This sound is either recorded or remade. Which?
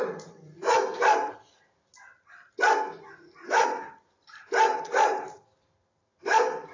recorded